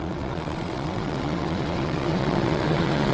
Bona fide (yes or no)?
no